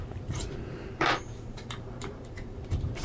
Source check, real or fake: fake